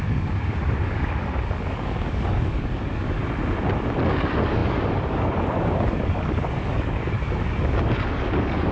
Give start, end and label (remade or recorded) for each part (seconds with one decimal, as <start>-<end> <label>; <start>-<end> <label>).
0.0-3.2 remade; 3.2-4.0 recorded; 4.0-8.7 remade

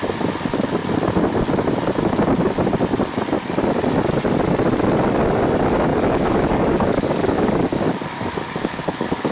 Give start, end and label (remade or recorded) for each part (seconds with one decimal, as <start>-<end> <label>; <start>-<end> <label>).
0.0-5.9 recorded; 5.9-9.3 remade

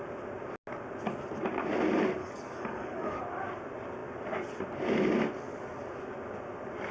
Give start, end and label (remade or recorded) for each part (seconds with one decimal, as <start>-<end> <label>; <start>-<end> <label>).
0.0-2.2 recorded; 2.2-3.2 remade; 3.2-6.9 recorded

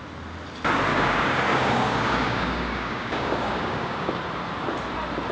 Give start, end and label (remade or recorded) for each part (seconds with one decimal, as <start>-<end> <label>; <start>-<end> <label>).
0.0-0.9 recorded; 0.9-4.1 remade; 4.1-5.3 recorded

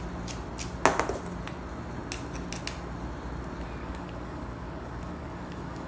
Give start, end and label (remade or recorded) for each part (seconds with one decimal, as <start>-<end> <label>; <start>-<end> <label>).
0.0-3.8 recorded; 3.8-5.9 remade

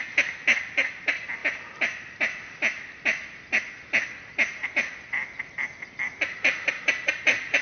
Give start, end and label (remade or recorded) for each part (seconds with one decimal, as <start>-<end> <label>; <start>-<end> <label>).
0.0-7.6 recorded

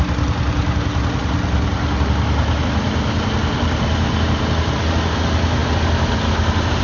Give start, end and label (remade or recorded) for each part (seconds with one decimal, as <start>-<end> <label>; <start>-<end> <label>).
0.0-6.8 recorded